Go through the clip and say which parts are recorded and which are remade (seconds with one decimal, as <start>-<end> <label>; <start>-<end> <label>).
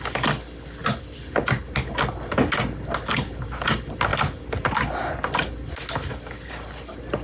0.0-0.8 recorded; 0.8-1.4 remade; 1.4-7.2 recorded